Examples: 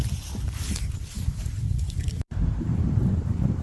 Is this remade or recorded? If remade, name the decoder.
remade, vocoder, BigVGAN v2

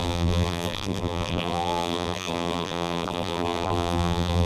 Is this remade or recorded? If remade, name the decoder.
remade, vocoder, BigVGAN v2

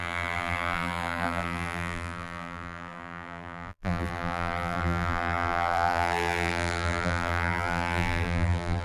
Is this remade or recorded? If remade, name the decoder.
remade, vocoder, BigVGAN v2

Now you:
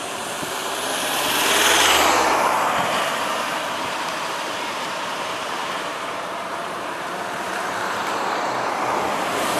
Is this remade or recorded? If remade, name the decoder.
remade, vocoder, BigVGAN v2